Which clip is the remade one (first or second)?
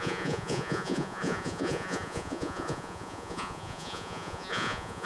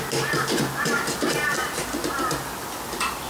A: first